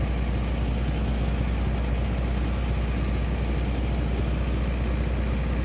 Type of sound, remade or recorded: recorded